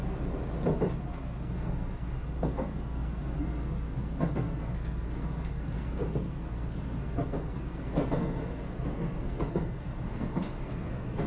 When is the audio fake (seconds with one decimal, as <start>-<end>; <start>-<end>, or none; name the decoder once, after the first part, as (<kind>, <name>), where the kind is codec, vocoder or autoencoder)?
1.1-11.3 (codec, SNAC)